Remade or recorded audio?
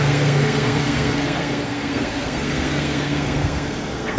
remade